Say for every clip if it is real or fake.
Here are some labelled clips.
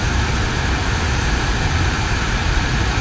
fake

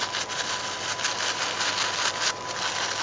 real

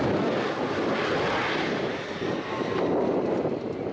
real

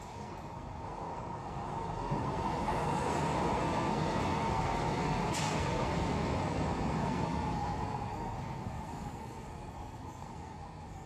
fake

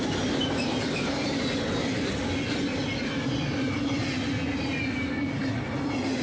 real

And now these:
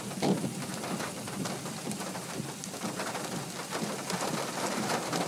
real